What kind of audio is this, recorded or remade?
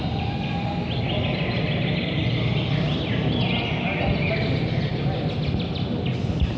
recorded